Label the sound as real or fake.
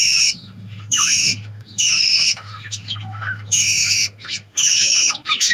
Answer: fake